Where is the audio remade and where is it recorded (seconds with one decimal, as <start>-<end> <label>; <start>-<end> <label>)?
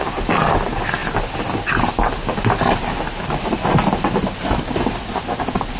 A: 0.0-5.8 recorded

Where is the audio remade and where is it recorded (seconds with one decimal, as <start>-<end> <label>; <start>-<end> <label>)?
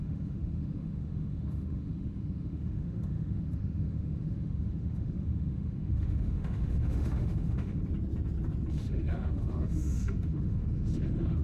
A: 0.0-7.8 remade; 7.8-8.7 recorded; 8.7-11.4 remade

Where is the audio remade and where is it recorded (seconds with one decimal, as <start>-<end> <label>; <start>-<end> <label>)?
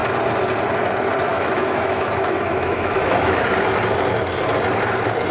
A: 0.0-1.3 recorded; 1.3-3.4 remade; 3.4-5.3 recorded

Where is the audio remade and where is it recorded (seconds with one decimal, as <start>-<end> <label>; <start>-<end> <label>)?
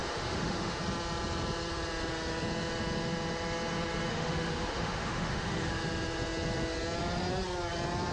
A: 0.0-0.8 remade; 0.8-4.1 recorded; 4.1-5.7 remade; 5.7-8.1 recorded